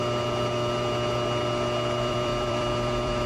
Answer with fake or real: fake